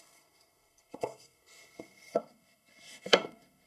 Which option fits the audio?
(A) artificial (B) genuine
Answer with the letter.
A